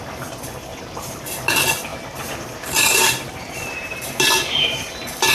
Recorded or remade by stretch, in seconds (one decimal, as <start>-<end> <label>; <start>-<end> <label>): 0.0-0.7 recorded; 0.7-1.5 remade; 1.5-1.9 recorded; 1.9-5.3 remade